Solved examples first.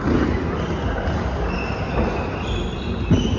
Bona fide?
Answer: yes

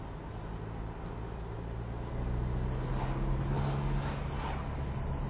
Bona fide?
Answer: yes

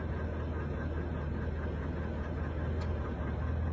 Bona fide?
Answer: yes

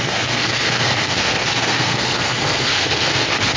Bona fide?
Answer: no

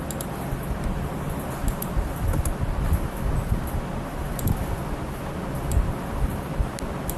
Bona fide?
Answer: yes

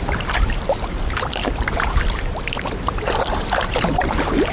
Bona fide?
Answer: no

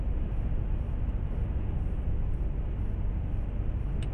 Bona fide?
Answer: yes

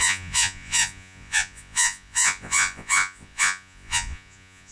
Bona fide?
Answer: no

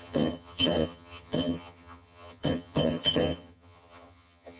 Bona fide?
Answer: no